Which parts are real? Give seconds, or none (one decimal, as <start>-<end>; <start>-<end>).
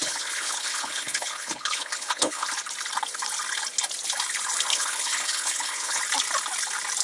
2.5-4.7; 6.0-7.0